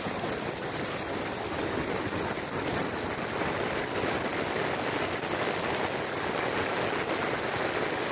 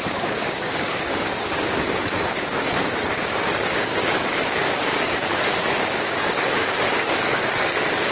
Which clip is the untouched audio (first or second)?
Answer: first